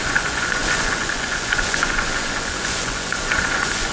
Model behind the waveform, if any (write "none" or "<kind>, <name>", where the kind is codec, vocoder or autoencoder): vocoder, Vocos